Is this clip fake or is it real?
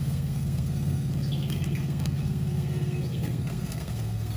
fake